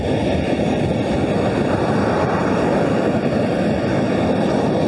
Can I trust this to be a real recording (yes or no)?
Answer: yes